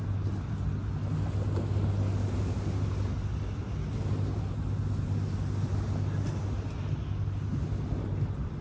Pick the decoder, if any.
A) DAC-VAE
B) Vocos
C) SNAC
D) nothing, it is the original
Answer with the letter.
D